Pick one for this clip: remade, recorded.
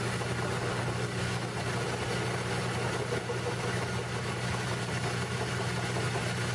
recorded